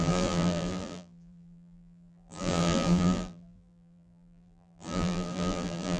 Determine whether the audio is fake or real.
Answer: fake